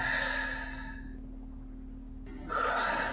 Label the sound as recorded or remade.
recorded